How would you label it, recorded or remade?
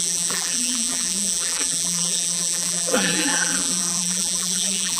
remade